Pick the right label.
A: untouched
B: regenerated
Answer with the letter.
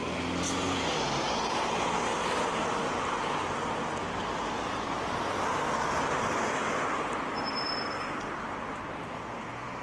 A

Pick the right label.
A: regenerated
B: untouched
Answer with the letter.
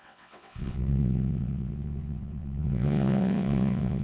A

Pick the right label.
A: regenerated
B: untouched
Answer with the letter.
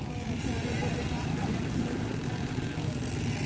B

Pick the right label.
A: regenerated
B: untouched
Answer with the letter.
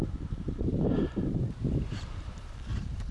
A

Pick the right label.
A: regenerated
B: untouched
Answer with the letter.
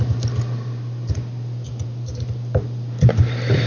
B